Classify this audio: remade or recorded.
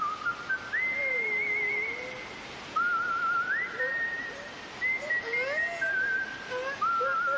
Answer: recorded